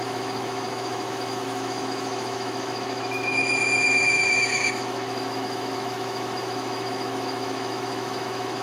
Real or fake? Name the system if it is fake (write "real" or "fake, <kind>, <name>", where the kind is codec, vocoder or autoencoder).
fake, autoencoder, DAC-VAE